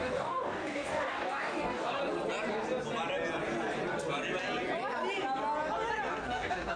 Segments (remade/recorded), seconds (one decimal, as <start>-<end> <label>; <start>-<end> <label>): 0.0-2.0 remade; 2.0-6.1 recorded; 6.1-6.8 remade